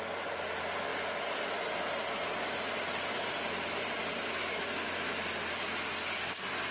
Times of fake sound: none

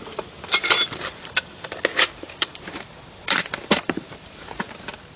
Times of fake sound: 1.9-4.8 (vocoder, BigVGAN v2)

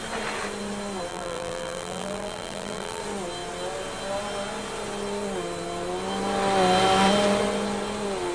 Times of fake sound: 1.1-3.0 (vocoder, BigVGAN v2)

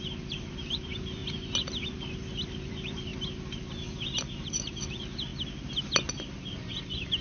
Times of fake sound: 0.0-1.2 (vocoder, BigVGAN v2); 1.8-3.1; 3.7-5.3; 6.7-7.2

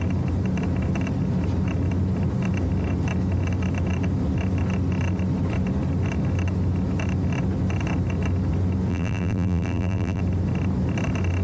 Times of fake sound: 8.9-10.2 (vocoder, BigVGAN v2)

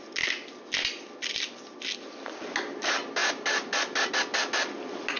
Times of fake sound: 3.2-4.1 (vocoder, BigVGAN v2)